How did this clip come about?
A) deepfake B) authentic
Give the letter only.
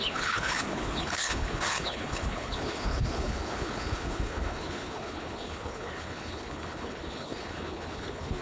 A